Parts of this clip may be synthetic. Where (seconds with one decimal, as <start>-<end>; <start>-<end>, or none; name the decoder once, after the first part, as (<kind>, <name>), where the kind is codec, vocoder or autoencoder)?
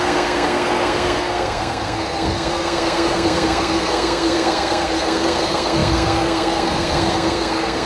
0.0-7.9 (codec, SNAC)